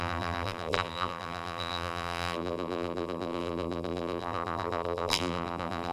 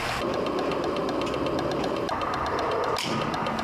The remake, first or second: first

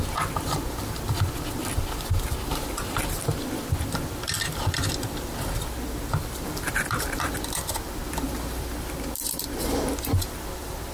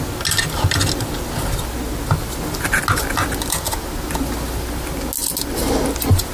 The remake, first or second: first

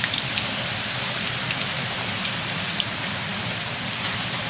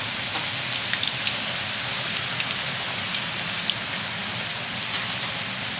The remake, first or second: first